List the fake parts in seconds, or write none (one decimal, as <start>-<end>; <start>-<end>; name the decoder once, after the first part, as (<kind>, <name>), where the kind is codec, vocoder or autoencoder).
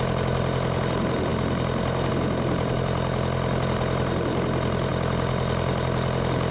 none